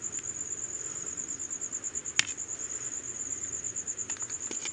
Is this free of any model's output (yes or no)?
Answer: yes